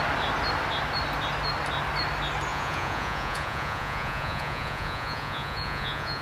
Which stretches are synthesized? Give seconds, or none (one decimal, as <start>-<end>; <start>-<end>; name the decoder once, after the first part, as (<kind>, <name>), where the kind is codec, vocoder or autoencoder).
2.5-6.2 (vocoder, Vocos)